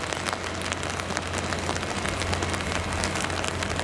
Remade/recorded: recorded